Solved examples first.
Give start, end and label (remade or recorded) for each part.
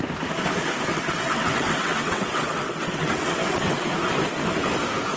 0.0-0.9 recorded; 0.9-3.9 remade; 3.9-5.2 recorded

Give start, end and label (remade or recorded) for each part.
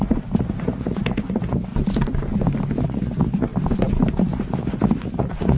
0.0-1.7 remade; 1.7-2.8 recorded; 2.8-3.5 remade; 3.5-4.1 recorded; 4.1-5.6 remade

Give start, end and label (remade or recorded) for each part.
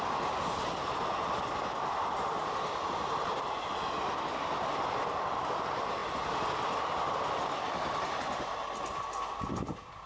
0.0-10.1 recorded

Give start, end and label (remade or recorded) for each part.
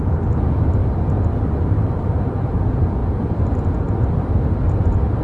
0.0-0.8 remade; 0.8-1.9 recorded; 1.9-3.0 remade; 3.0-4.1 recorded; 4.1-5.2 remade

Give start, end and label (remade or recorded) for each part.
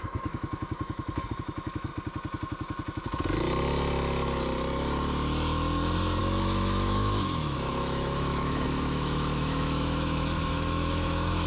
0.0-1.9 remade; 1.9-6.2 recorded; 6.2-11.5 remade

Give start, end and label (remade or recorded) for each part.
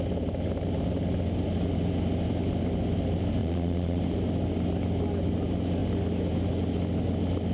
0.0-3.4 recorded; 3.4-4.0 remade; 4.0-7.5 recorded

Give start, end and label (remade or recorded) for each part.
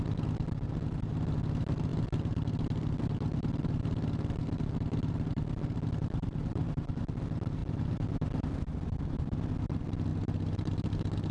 0.0-6.0 recorded; 6.0-7.0 remade; 7.0-7.6 recorded; 7.6-9.1 remade; 9.1-11.3 recorded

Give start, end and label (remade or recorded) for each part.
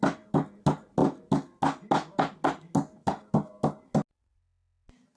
0.0-5.2 recorded